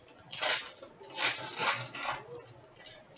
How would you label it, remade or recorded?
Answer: recorded